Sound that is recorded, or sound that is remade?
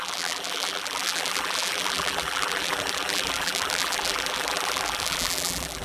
remade